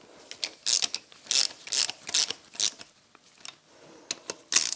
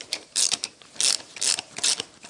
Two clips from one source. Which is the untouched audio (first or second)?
first